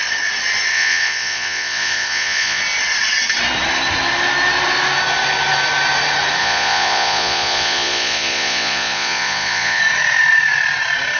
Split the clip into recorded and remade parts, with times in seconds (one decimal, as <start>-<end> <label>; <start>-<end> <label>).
0.0-0.7 recorded; 0.7-2.6 remade; 2.6-6.4 recorded; 6.4-9.8 remade; 9.8-11.2 recorded